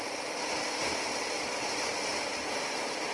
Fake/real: real